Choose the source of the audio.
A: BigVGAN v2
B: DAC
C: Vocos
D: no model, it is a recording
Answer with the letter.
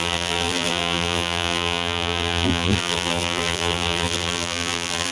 A